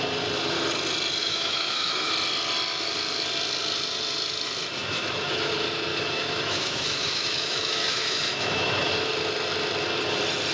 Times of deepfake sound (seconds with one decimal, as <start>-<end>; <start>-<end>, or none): 1.2-2.1; 4.8-5.5; 5.9-8.9